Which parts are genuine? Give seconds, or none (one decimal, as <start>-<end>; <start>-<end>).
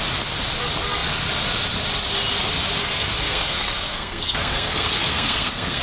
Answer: 0.0-2.8